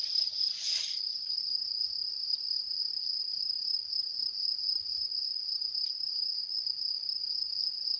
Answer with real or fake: fake